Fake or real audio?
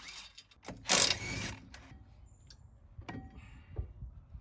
real